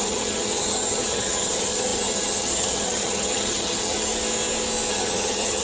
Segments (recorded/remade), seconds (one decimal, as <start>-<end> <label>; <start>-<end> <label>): 0.0-4.1 remade; 4.1-4.9 recorded; 4.9-5.6 remade